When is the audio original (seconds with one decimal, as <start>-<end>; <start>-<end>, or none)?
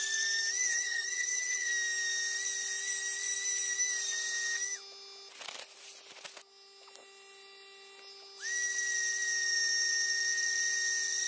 0.0-0.7; 1.7-11.3